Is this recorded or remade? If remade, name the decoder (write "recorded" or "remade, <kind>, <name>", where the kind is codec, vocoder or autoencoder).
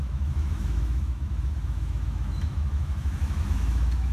remade, autoencoder, DAC-VAE